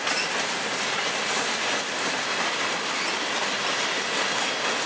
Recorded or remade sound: recorded